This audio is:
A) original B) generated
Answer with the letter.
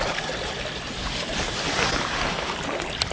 A